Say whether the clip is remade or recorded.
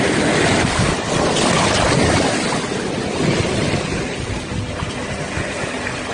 recorded